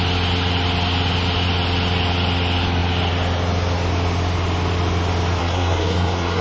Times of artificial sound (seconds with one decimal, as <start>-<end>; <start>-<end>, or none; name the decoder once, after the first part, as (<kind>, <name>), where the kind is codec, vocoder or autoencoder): 5.4-6.4 (codec, SNAC)